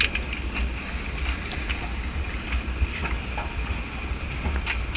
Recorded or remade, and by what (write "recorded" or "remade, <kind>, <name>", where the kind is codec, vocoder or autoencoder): recorded